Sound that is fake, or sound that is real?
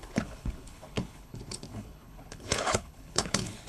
fake